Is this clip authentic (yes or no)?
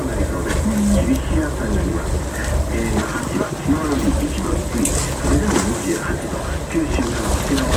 yes